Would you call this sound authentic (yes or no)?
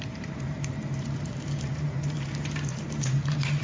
no